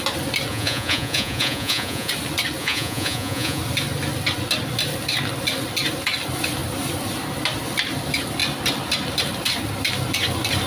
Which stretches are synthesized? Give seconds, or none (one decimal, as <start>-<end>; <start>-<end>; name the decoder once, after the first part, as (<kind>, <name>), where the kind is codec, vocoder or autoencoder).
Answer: 0.5-2.1 (vocoder, Vocos); 2.6-3.6